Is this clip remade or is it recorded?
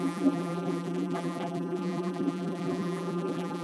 remade